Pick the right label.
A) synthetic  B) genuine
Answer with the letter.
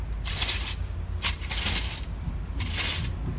B